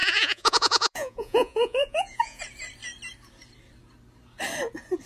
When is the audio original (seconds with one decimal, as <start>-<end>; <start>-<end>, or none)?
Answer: 2.4-5.1